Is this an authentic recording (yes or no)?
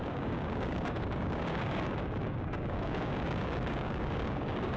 no